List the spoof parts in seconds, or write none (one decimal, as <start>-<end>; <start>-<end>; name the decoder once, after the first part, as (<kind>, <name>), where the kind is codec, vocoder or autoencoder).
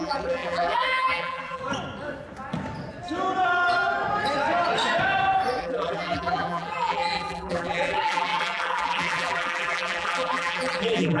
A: 0.0-1.6 (vocoder, BigVGAN v2); 5.6-11.2